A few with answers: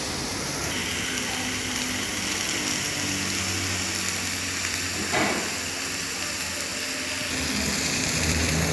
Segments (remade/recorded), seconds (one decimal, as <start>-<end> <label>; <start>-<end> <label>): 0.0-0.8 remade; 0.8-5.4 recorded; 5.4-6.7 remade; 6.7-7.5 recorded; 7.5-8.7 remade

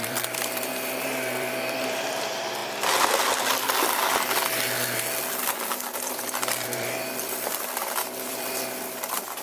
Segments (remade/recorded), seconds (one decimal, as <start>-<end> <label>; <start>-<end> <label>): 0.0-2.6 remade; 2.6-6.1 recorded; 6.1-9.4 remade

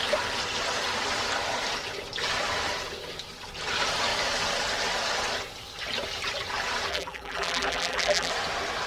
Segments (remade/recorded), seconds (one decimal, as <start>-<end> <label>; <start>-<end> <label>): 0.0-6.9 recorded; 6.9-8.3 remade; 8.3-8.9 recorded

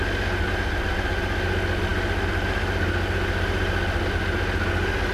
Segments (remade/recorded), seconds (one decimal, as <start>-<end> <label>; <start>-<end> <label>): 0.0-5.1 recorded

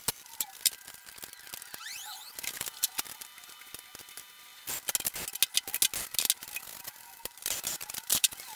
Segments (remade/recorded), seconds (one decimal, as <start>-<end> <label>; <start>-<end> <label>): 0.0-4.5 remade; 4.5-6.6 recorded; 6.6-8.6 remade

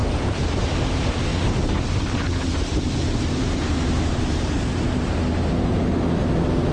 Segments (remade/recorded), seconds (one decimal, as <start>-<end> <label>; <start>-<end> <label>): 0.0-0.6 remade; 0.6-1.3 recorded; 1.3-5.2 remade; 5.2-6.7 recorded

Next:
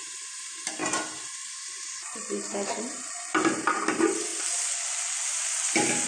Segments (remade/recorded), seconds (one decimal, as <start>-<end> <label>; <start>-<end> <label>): 0.0-0.8 remade; 0.8-3.4 recorded; 3.4-4.3 remade; 4.3-5.5 recorded; 5.5-6.1 remade